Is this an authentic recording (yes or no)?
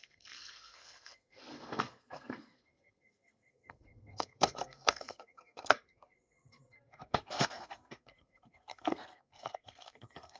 no